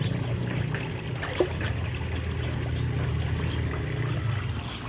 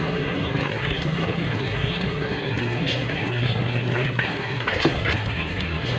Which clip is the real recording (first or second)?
first